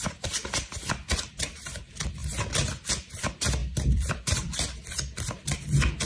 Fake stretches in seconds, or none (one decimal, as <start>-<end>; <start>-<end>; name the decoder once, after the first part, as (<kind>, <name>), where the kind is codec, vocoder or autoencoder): 0.0-2.2 (vocoder, BigVGAN v2); 2.9-6.1